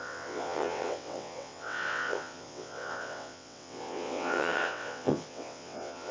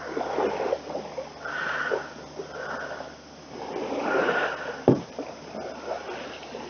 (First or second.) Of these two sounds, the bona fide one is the second